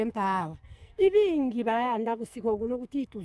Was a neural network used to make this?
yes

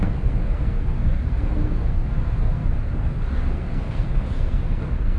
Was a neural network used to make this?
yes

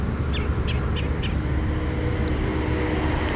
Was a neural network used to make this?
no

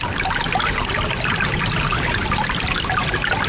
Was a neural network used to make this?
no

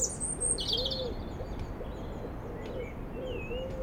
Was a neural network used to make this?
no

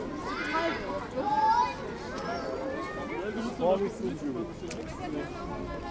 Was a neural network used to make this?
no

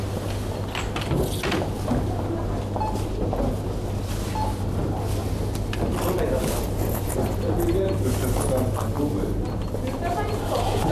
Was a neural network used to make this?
no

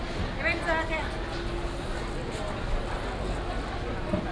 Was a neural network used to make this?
no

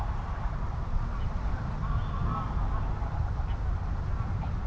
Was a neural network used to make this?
no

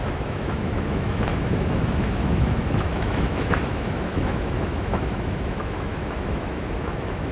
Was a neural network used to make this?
yes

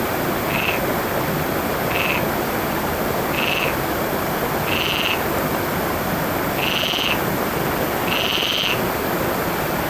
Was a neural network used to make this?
no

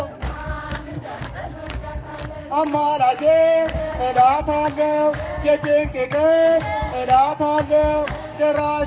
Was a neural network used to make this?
yes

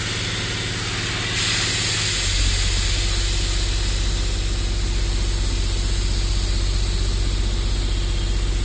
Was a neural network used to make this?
no